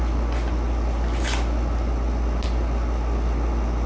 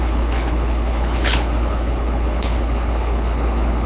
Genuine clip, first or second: first